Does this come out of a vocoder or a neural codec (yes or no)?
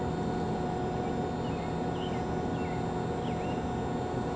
no